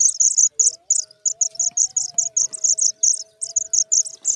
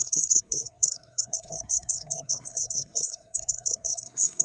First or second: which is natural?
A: first